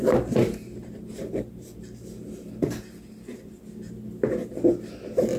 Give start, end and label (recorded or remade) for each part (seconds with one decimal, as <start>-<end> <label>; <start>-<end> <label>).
0.0-0.4 recorded; 0.4-3.6 remade; 3.6-5.4 recorded